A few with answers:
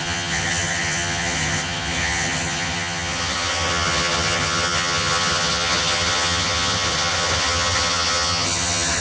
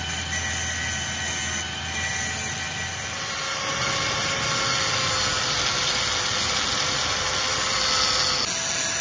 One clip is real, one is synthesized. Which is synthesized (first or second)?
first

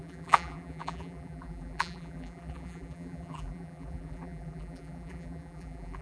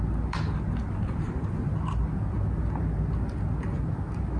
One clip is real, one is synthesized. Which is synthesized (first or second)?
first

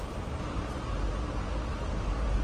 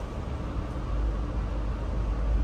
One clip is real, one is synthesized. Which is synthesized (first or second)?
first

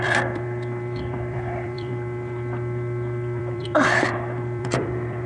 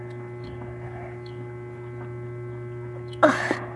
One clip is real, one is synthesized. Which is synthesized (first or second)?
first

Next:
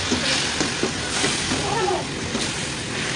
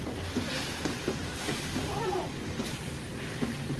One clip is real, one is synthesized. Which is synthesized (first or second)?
second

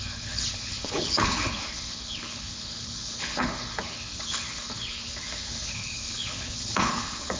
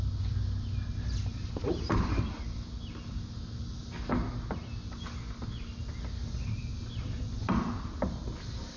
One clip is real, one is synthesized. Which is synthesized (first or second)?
first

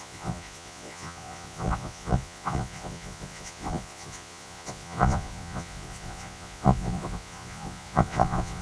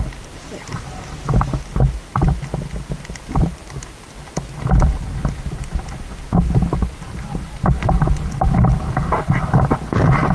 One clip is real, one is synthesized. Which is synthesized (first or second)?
first